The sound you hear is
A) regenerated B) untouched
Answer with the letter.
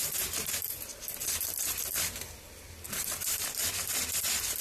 B